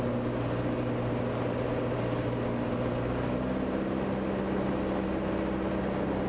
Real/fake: real